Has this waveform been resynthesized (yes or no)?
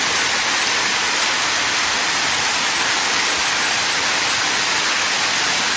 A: no